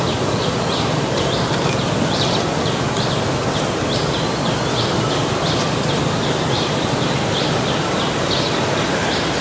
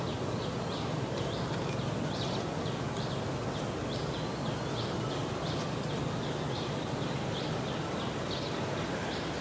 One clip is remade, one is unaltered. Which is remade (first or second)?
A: first